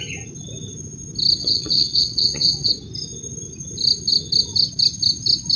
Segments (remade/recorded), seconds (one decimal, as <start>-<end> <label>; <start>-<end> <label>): 0.0-1.4 recorded; 1.4-2.7 remade; 2.7-5.6 recorded